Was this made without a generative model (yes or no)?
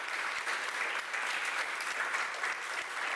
yes